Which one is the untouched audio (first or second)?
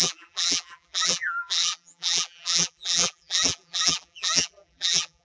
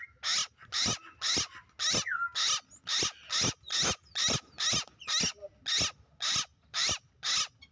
second